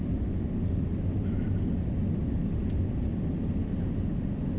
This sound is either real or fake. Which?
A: real